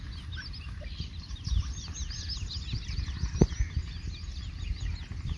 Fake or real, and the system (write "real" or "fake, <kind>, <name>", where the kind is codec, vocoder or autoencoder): real